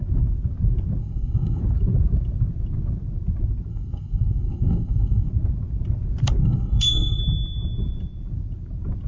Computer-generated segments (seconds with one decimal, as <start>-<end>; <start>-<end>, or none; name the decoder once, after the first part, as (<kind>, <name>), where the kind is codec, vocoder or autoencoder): 1.0-1.6 (codec, SNAC); 3.7-5.3; 6.4-7.2